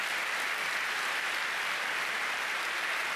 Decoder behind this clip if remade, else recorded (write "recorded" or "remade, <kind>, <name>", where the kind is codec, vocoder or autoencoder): recorded